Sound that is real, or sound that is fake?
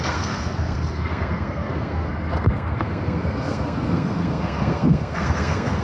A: fake